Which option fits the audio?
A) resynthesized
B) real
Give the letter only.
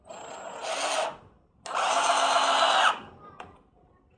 B